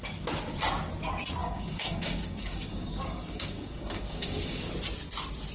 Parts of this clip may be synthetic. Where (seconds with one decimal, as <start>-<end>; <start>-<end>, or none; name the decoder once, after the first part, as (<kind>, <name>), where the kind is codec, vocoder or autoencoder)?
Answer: 1.4-4.7 (codec, DAC)